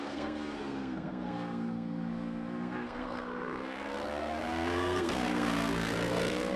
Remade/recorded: remade